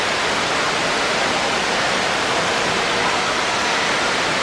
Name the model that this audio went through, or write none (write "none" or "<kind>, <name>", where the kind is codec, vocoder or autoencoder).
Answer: none